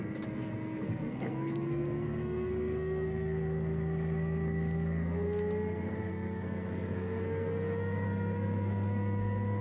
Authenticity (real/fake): fake